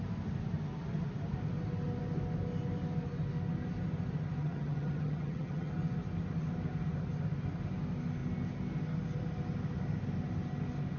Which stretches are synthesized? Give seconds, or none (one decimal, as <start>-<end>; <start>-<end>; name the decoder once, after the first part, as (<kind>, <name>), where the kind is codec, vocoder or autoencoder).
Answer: 4.4-5.7 (vocoder, HiFi-GAN)